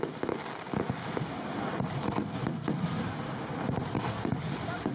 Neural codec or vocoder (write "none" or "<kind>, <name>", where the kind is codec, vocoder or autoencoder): none